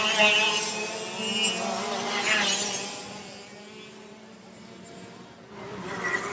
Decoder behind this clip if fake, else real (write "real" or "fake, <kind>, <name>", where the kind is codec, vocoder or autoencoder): real